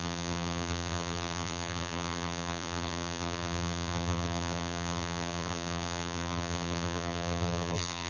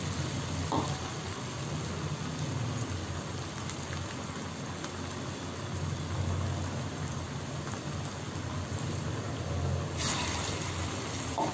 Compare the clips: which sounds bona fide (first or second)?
second